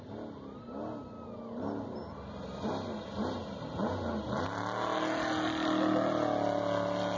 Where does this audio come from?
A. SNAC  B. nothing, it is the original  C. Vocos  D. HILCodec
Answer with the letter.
B